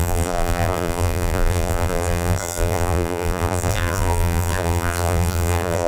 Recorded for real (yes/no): no